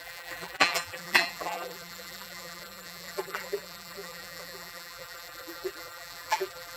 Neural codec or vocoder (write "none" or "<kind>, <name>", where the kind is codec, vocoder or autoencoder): vocoder, BigVGAN v2